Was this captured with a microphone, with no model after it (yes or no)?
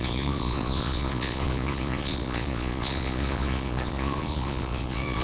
no